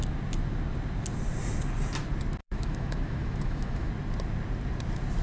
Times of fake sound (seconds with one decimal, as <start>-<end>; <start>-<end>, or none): 2.4-3.9